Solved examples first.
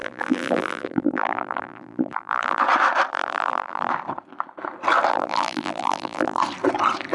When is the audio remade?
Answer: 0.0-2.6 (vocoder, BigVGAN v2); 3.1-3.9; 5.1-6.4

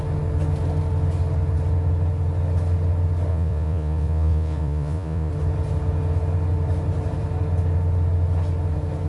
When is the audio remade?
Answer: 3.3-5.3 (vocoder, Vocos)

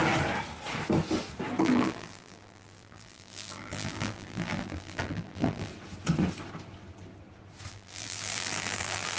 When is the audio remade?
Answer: 1.6-5.7 (vocoder, BigVGAN v2); 7.7-9.2